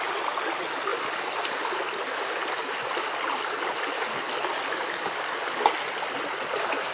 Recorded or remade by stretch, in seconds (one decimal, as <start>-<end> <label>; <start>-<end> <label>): 0.0-6.9 recorded